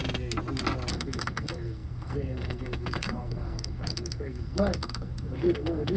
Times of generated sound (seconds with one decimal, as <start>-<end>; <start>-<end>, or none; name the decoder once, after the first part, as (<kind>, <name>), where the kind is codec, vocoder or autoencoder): 0.9-6.0 (codec, SNAC)